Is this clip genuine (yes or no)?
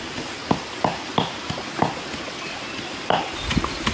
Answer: yes